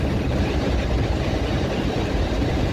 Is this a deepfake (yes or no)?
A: yes